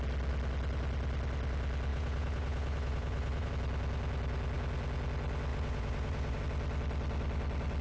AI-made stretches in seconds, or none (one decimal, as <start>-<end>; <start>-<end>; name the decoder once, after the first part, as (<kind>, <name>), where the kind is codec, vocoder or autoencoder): 1.9-3.5 (vocoder, Vocos); 5.5-6.4